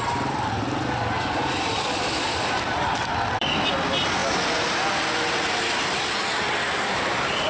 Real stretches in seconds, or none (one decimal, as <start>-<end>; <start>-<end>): 0.0-1.4; 3.6-7.5